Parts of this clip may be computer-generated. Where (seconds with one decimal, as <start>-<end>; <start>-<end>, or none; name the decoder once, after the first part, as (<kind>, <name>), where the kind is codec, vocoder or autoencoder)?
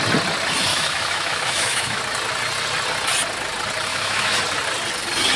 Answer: 0.7-2.0 (autoencoder, DAC-VAE); 3.9-4.4